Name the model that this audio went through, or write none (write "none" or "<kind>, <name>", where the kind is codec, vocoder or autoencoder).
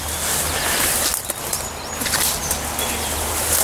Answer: none